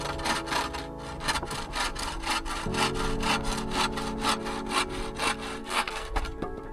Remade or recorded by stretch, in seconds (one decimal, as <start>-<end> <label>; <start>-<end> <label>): 0.0-5.6 recorded; 5.6-6.2 remade; 6.2-6.7 recorded

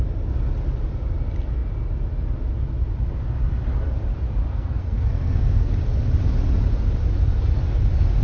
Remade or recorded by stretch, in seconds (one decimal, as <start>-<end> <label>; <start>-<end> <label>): 0.0-4.5 recorded; 4.5-5.7 remade; 5.7-8.2 recorded

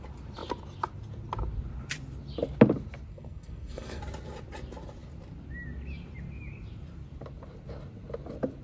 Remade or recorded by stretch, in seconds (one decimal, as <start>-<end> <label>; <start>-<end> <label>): 0.0-3.1 recorded; 3.1-4.0 remade; 4.0-8.6 recorded

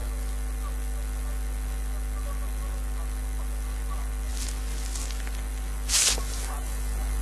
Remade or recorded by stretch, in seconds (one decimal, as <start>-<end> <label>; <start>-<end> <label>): 0.0-7.2 recorded

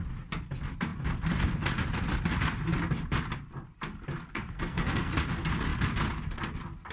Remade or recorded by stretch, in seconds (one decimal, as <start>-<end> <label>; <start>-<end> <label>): 0.0-4.3 recorded; 4.3-5.1 remade; 5.1-6.9 recorded

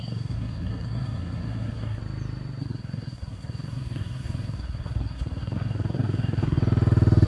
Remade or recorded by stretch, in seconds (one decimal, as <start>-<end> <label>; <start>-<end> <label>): 0.0-2.0 remade; 2.0-2.6 recorded; 2.6-6.6 remade; 6.6-7.3 recorded